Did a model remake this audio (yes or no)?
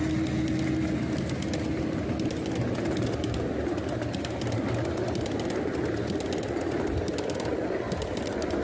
no